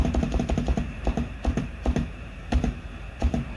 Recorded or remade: remade